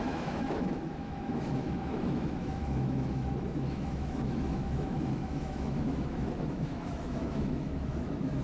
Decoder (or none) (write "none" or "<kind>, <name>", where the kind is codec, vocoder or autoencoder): autoencoder, DAC-VAE